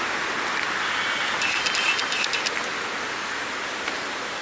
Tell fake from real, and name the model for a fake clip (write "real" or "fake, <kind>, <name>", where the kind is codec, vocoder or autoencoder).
real